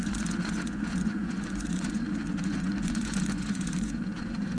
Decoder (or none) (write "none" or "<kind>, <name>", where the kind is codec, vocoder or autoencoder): vocoder, Vocos